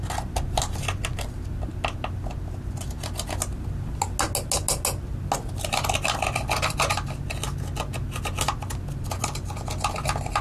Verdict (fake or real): real